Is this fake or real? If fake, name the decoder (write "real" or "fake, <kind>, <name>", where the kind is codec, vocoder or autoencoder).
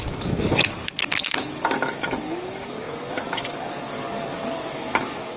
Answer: fake, codec, DAC